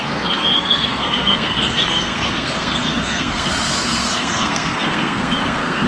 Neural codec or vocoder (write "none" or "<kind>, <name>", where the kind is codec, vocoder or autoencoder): codec, SNAC